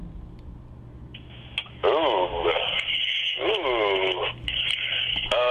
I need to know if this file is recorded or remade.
recorded